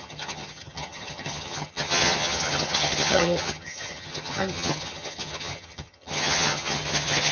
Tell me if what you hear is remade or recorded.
remade